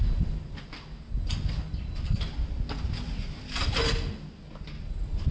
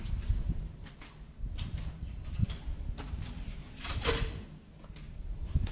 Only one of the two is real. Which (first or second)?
first